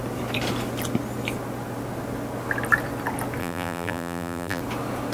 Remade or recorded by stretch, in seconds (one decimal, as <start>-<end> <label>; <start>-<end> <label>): 0.0-3.4 recorded; 3.4-4.6 remade; 4.6-5.1 recorded